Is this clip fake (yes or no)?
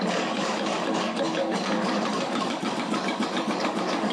yes